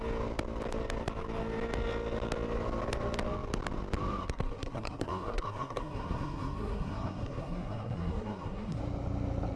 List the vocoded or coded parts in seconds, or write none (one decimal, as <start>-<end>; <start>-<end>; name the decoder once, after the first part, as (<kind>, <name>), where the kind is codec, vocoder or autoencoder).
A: 4.2-8.8 (codec, SNAC)